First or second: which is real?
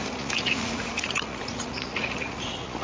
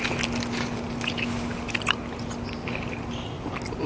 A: second